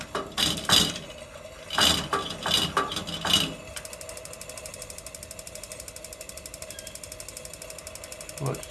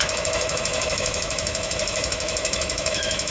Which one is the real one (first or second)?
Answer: first